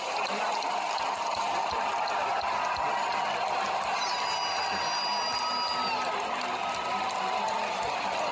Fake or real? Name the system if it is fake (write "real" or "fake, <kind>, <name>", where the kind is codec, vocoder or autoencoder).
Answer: real